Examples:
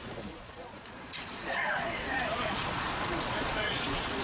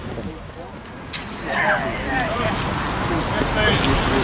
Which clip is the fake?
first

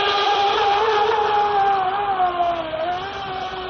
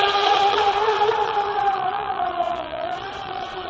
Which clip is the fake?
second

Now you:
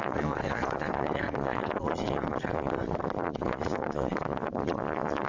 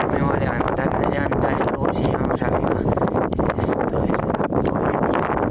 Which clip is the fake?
first